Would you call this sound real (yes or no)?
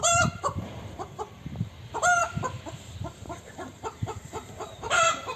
no